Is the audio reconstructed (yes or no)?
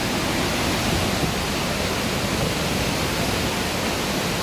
no